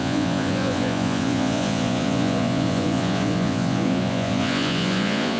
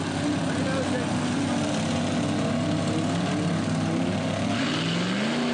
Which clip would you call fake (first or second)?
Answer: first